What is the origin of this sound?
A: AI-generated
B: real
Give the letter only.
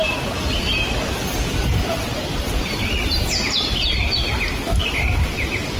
B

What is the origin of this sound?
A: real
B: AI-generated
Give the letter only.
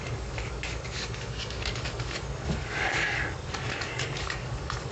B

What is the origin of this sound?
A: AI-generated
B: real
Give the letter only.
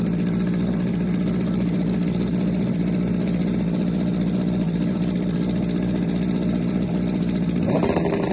B